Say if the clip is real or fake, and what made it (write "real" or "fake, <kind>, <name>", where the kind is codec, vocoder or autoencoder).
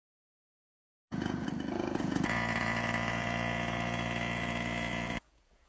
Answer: fake, vocoder, Vocos